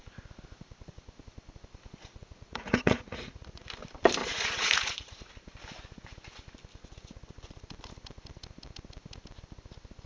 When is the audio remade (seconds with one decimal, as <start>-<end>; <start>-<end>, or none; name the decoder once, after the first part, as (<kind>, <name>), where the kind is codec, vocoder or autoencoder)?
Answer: 2.2-3.7 (vocoder, Vocos); 4.2-5.3